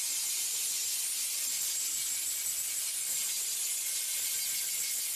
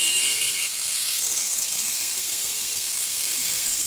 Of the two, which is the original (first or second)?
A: first